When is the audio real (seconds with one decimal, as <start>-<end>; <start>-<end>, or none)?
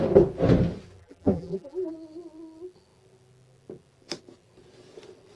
0.0-1.0; 1.9-5.4